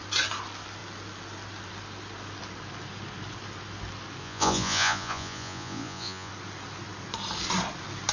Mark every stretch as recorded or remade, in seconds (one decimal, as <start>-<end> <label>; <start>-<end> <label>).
0.0-4.2 recorded; 4.2-6.3 remade; 6.3-8.1 recorded